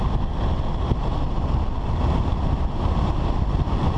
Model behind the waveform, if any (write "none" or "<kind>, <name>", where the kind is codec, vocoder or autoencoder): none